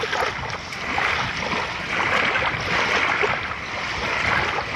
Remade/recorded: recorded